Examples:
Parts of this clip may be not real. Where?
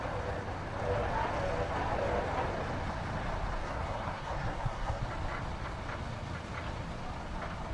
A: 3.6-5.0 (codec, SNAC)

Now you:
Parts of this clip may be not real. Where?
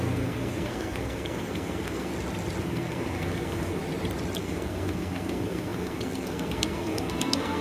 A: 0.0-2.1 (codec, SNAC); 2.6-3.8; 4.4-7.6